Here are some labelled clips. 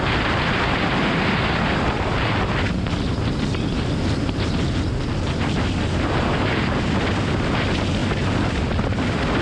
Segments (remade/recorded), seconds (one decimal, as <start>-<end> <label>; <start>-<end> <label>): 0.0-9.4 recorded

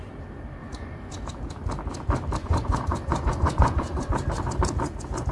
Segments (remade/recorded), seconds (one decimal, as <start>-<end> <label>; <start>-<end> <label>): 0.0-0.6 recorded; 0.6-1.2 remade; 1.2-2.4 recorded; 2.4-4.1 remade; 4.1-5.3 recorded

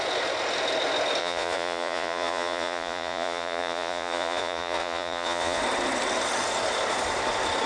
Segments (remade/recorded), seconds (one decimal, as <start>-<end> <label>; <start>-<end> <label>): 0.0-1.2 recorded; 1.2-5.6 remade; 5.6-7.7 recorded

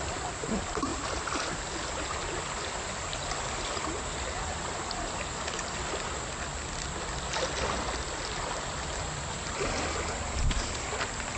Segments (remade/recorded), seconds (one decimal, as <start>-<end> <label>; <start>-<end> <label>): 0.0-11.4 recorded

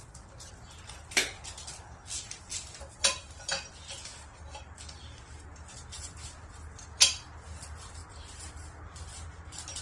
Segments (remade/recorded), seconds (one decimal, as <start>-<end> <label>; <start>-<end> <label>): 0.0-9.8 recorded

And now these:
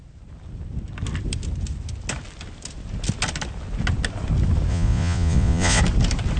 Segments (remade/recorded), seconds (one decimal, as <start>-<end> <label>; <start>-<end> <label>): 0.0-4.7 recorded; 4.7-5.8 remade; 5.8-6.4 recorded

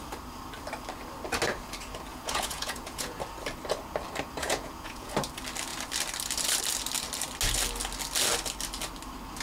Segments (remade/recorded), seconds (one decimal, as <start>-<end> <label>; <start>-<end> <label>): 0.0-2.1 recorded; 2.1-3.2 remade; 3.2-4.4 recorded; 4.4-5.1 remade; 5.1-9.4 recorded